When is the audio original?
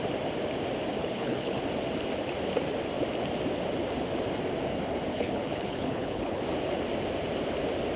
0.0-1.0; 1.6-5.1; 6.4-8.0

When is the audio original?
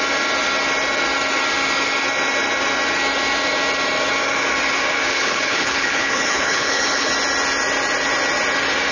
0.0-5.1; 7.1-8.9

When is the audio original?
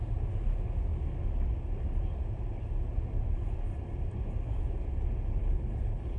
0.0-5.4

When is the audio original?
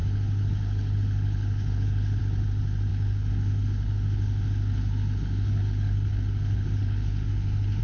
2.2-2.9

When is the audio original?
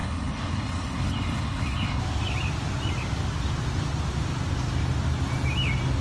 2.0-6.0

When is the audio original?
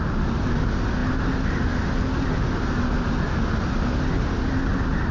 0.0-5.1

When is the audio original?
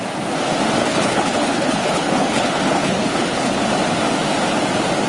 0.0-0.8; 3.6-5.1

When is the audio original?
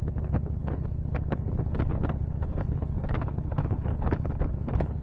none